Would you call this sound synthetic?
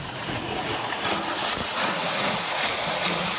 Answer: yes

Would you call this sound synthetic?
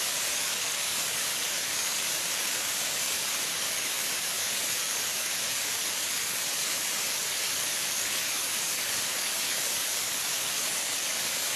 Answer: yes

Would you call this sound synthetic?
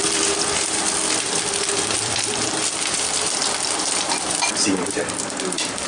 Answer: yes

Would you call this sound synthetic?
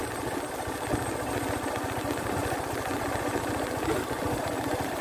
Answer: no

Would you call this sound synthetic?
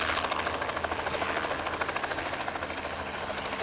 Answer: no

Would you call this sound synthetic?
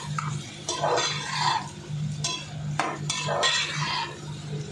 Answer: no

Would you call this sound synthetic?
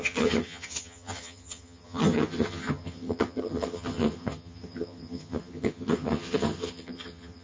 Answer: yes